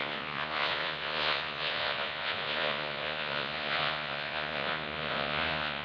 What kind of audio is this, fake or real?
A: fake